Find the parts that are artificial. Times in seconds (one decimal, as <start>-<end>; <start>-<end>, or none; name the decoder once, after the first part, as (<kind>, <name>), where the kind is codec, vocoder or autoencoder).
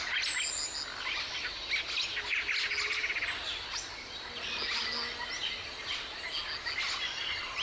none